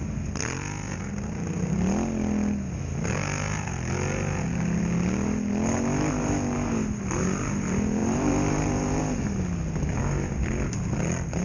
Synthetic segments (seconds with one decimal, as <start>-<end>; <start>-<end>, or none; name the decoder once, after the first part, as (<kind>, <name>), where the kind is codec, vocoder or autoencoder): 8.0-9.0 (vocoder, BigVGAN v2)